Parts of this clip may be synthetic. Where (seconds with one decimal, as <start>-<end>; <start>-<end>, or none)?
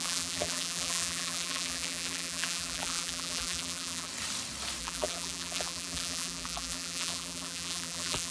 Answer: 0.0-4.1; 4.8-8.3